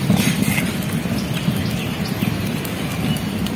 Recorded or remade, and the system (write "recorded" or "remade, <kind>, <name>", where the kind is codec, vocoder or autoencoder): recorded